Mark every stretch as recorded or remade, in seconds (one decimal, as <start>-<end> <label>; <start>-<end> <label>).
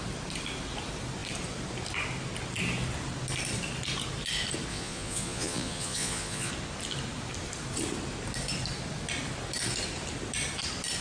0.0-4.7 recorded; 4.7-6.5 remade; 6.5-11.0 recorded